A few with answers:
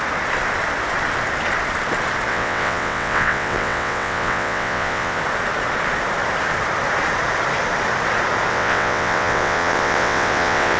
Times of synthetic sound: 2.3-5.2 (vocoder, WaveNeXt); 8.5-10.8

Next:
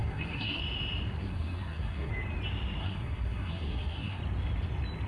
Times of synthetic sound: 0.0-0.6 (codec, SNAC); 1.2-2.1; 2.8-4.2

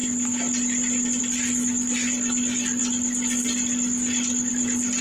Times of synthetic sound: 1.2-2.8 (vocoder, BigVGAN v2); 4.5-5.0

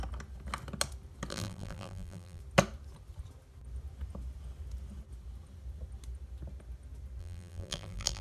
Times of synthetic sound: 1.3-2.4 (vocoder, BigVGAN v2); 7.2-8.2

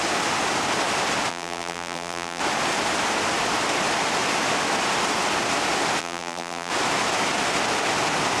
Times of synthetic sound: 1.3-2.4 (vocoder, BigVGAN v2); 6.0-6.7

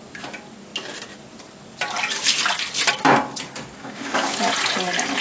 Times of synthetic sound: 3.8-4.4 (codec, DAC)

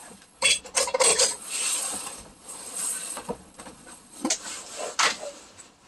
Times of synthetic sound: 0.0-0.6 (vocoder, Vocos); 1.1-4.3